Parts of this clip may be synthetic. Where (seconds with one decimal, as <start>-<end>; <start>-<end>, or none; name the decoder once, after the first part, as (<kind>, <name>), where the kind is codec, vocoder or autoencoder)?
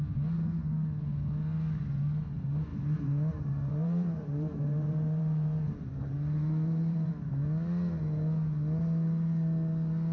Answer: 2.7-7.1 (vocoder, BigVGAN v2)